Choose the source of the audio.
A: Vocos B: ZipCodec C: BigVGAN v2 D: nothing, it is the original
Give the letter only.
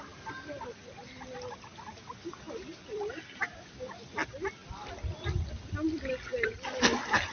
D